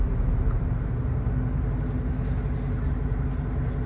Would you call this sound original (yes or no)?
yes